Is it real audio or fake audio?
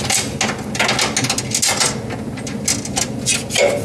real